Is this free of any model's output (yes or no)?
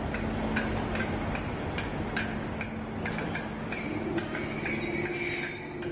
yes